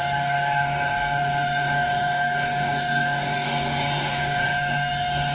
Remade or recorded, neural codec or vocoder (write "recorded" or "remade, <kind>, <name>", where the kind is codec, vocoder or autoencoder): remade, codec, DAC